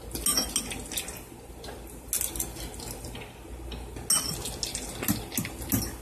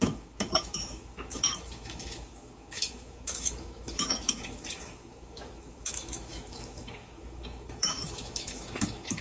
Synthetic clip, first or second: second